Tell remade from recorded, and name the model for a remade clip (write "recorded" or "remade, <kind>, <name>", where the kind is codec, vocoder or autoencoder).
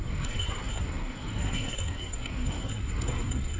remade, codec, SNAC